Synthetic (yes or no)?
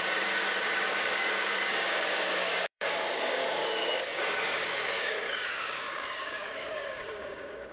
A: yes